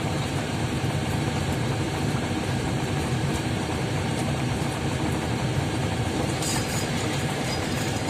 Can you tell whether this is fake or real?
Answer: fake